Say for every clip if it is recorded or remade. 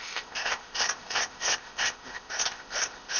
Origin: remade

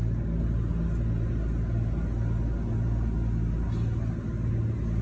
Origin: recorded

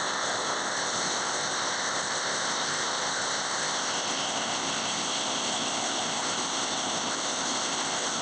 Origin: remade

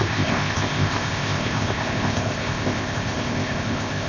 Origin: remade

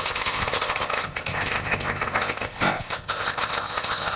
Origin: remade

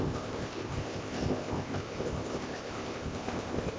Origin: remade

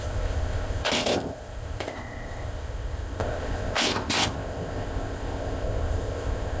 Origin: remade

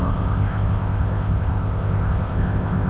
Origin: remade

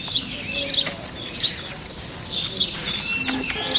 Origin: recorded